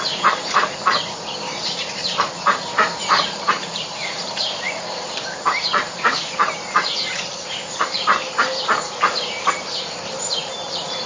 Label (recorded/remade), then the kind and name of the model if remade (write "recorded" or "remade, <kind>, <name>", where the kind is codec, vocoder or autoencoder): remade, vocoder, BigVGAN v2